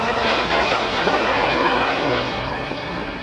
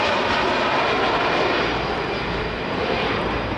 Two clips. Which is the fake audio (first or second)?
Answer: first